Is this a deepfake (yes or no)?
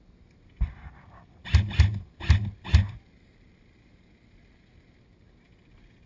no